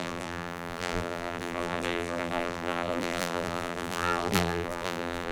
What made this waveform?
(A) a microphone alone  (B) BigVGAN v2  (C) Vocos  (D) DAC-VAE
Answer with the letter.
B